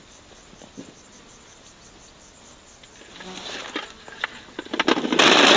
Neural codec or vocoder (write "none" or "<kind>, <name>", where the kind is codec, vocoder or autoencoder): none